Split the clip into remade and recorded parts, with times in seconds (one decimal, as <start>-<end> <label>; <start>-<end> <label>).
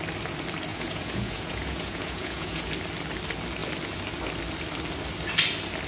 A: 0.0-0.7 recorded; 0.7-2.7 remade; 2.7-5.9 recorded